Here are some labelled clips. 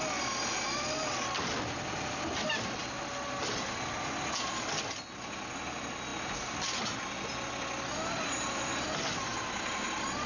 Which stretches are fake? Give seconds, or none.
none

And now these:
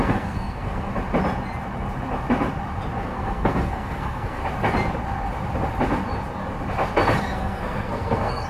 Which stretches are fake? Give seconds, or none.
0.0-0.9 (codec, SNAC); 3.0-4.4; 7.2-8.5

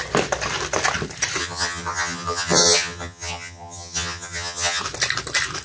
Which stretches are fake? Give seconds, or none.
1.4-4.8 (vocoder, HiFi-GAN)